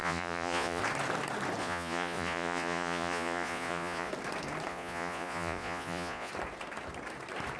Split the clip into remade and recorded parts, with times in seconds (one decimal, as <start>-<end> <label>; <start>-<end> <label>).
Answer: 0.0-0.8 remade; 0.8-1.6 recorded; 1.6-4.1 remade; 4.1-4.7 recorded; 4.7-6.3 remade; 6.3-7.6 recorded